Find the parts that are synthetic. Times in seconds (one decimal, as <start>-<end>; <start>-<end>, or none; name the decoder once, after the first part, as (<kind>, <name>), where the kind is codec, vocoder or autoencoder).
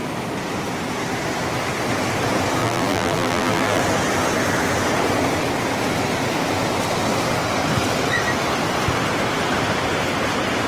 2.6-3.8 (vocoder, BigVGAN v2)